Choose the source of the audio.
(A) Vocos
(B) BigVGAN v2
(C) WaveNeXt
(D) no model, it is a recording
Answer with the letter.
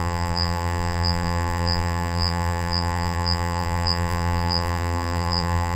B